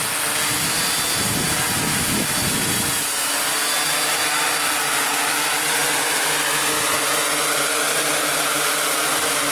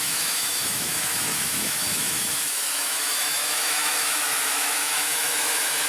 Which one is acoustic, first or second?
first